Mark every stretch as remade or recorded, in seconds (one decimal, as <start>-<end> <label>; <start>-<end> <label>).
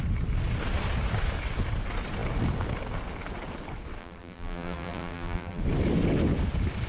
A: 0.0-4.0 recorded; 4.0-5.6 remade; 5.6-6.9 recorded